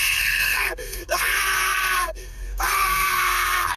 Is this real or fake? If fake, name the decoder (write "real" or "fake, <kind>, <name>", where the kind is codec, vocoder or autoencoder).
fake, codec, SNAC